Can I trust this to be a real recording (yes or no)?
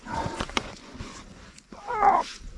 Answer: no